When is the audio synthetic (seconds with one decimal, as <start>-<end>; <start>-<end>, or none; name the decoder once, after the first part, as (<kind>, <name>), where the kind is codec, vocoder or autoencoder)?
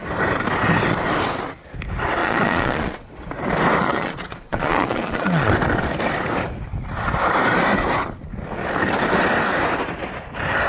2.2-3.1 (vocoder, Vocos); 3.8-5.5